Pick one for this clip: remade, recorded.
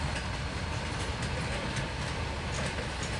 recorded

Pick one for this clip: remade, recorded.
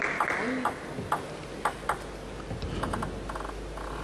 recorded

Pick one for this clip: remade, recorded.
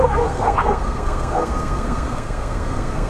remade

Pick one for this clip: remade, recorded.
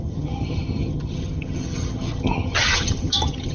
remade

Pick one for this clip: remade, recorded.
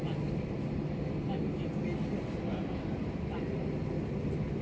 recorded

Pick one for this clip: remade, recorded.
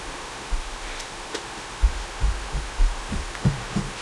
remade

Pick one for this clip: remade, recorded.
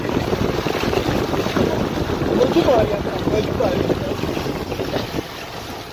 recorded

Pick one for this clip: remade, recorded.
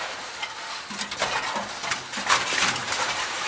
recorded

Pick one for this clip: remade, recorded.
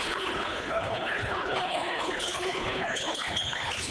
remade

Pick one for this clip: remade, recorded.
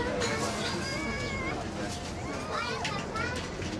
recorded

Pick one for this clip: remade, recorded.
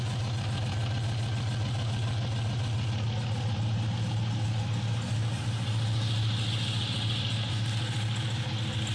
recorded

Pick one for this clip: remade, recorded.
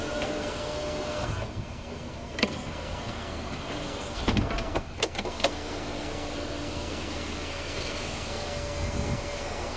remade